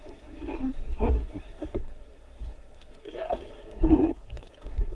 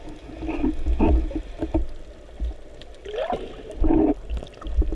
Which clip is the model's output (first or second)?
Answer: first